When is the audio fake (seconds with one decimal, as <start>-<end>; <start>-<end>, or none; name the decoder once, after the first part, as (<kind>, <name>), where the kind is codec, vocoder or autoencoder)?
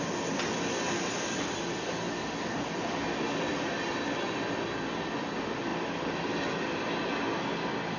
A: none